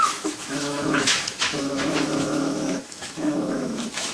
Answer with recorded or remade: remade